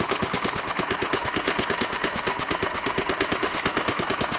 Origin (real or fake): fake